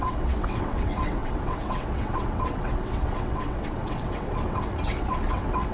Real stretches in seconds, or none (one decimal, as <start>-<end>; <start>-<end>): none